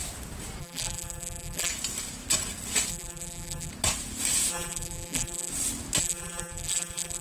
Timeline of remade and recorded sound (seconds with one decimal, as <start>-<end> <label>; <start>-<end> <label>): 0.0-0.6 recorded; 0.6-1.7 remade; 1.7-2.9 recorded; 2.9-3.7 remade; 3.7-4.5 recorded; 4.5-5.5 remade; 5.5-6.0 recorded; 6.0-7.2 remade

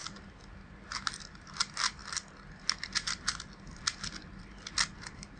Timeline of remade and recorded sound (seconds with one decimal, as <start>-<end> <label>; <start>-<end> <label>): 0.0-5.4 recorded